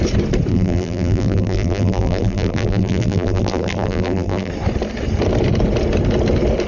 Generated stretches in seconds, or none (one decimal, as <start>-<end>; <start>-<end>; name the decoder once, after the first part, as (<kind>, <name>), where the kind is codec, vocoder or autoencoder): 0.5-4.5 (vocoder, BigVGAN v2)